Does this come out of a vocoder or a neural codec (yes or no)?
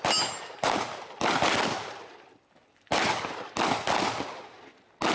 no